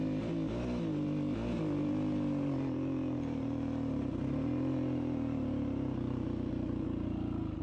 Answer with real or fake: real